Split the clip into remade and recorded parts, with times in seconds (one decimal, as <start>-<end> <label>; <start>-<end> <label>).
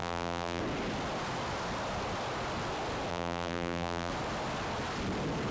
0.0-0.6 remade; 0.6-3.1 recorded; 3.1-4.1 remade; 4.1-5.5 recorded